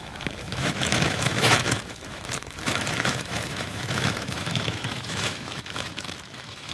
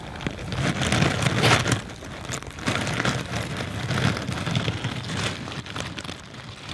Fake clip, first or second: first